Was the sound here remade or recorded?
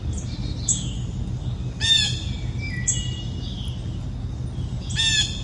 recorded